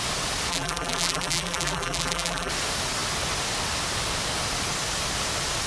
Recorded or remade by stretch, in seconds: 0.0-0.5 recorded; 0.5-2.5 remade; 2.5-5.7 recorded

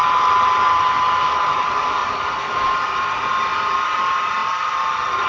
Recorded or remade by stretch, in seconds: 0.0-2.0 recorded; 2.0-2.5 remade; 2.5-3.5 recorded; 3.5-4.0 remade; 4.0-4.4 recorded; 4.4-5.3 remade

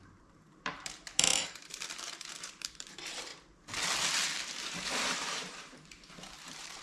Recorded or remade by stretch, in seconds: 0.0-3.3 remade; 3.3-5.1 recorded; 5.1-6.8 remade

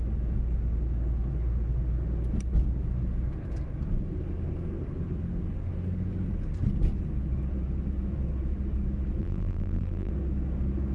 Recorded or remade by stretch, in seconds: 0.0-9.2 recorded; 9.2-10.1 remade; 10.1-10.9 recorded